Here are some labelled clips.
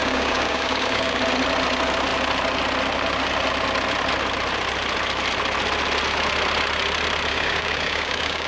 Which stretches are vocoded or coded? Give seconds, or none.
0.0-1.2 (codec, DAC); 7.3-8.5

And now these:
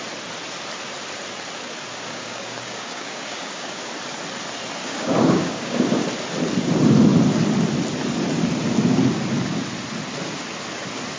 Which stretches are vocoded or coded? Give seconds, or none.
1.9-3.9 (codec, DAC); 4.8-5.9

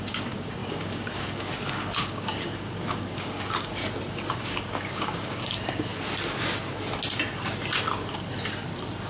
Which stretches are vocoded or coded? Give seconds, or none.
0.0-3.8 (codec, DAC); 4.3-5.9

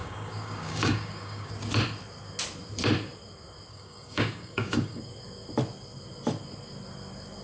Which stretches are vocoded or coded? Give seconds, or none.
0.0-1.5 (codec, DAC); 3.7-5.0